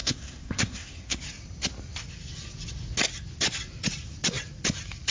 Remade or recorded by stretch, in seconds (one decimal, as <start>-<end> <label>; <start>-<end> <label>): 0.0-1.2 remade; 1.2-5.1 recorded